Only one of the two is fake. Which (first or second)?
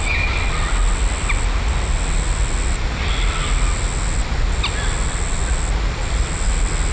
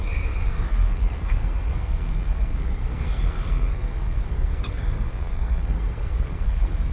second